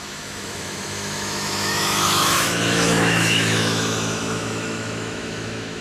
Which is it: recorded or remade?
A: remade